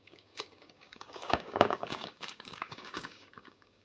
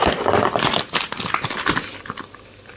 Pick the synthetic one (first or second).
first